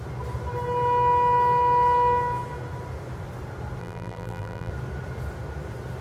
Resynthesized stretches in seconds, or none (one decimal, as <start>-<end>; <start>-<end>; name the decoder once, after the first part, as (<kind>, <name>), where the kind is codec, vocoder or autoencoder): 3.8-4.7 (vocoder, BigVGAN v2)